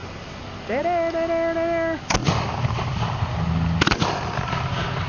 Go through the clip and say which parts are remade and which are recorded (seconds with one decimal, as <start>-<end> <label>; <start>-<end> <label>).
0.0-5.1 recorded